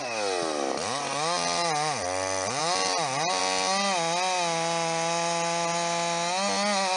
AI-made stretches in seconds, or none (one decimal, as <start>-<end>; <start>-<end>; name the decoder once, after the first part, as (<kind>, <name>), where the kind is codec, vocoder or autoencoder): none